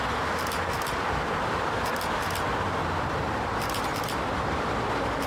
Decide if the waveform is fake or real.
real